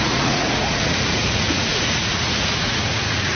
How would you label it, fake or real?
fake